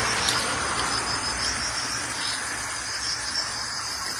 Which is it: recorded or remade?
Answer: remade